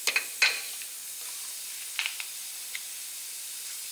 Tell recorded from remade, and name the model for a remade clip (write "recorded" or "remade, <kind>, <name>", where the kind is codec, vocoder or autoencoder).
recorded